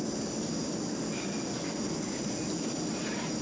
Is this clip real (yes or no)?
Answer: yes